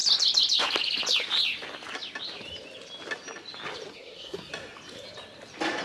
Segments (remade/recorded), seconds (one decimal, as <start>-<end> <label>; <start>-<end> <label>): 0.0-3.9 recorded; 3.9-4.5 remade; 4.5-5.8 recorded